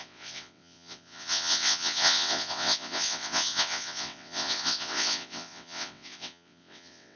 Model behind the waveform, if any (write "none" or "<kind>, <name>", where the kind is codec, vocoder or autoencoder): vocoder, WaveNeXt